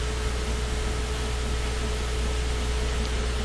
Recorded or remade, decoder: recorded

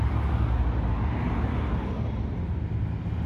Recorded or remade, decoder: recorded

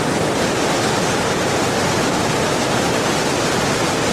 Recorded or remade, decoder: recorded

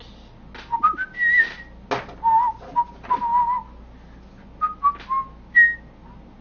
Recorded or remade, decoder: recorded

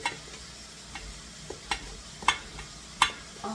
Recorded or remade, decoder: recorded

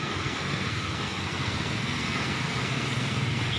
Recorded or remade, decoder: remade, codec, SNAC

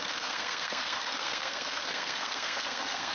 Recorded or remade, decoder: remade, codec, SNAC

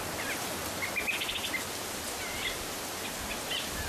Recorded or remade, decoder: recorded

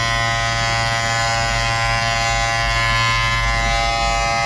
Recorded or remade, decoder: recorded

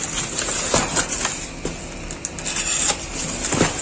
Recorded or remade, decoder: recorded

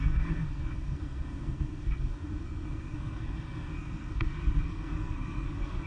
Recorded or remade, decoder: remade, codec, SNAC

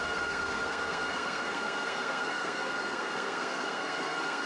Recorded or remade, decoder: remade, codec, SNAC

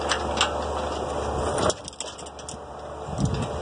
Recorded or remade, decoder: recorded